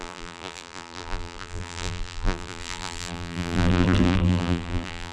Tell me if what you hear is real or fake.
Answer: fake